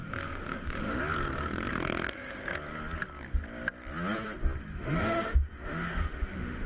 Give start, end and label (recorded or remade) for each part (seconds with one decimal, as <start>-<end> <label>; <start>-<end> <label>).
0.0-1.0 remade; 1.0-1.7 recorded; 1.7-2.5 remade; 2.5-4.6 recorded; 4.6-6.7 remade